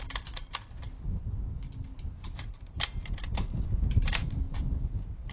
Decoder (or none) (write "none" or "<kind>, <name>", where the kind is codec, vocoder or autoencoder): none